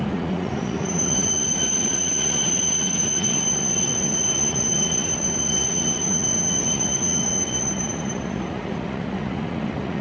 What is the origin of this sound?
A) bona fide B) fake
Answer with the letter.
B